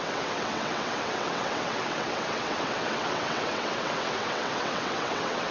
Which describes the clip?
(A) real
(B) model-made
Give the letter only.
B